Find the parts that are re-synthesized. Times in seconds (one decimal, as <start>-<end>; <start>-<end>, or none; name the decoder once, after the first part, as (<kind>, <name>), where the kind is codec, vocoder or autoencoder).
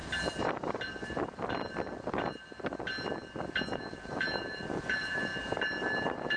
3.8-5.3 (vocoder, Vocos)